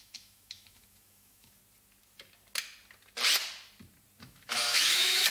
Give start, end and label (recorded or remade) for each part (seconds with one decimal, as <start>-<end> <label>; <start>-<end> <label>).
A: 0.0-1.6 remade; 1.6-4.2 recorded; 4.2-5.3 remade